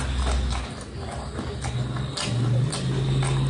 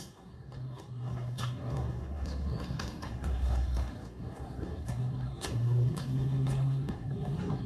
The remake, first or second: second